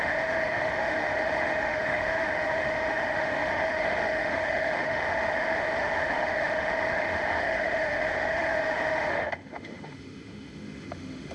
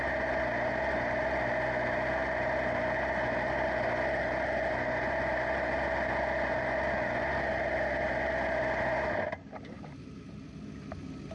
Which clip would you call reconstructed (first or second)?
first